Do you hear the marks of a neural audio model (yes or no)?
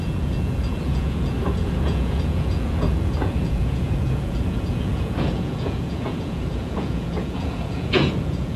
yes